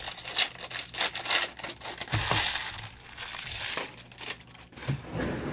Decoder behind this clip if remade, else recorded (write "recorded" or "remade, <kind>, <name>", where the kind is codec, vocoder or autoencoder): recorded